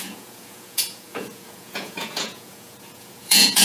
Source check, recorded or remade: remade